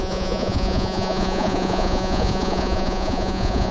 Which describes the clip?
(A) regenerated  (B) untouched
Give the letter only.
A